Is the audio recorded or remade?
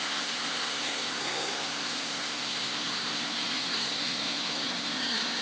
remade